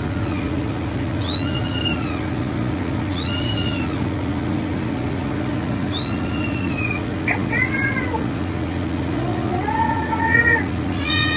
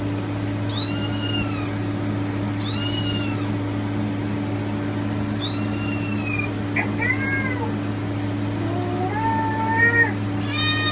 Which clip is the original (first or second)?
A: second